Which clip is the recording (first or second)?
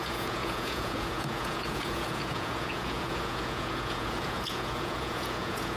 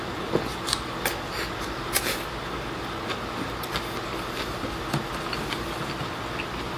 second